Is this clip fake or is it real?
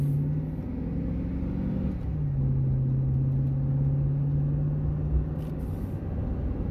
real